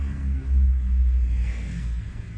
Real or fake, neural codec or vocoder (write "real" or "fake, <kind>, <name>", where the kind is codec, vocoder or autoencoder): fake, codec, SNAC